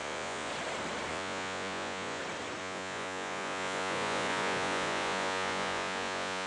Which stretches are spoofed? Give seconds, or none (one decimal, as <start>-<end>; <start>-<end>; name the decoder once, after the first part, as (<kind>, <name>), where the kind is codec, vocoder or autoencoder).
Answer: 0.0-0.5 (vocoder, Vocos); 1.1-2.2; 2.6-6.5